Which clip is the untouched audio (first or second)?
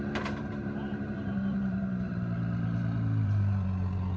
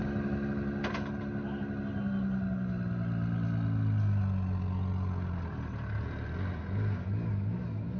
second